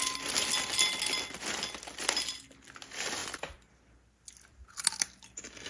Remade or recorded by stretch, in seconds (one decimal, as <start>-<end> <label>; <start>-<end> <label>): 0.0-5.7 recorded